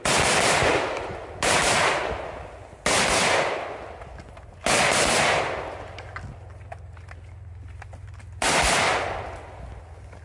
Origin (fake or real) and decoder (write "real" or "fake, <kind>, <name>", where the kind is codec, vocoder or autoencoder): real